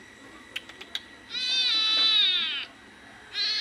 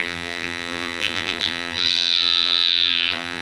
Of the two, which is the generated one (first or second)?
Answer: second